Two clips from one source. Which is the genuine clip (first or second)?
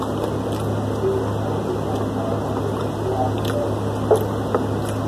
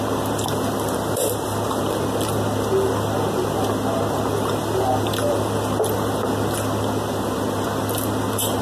first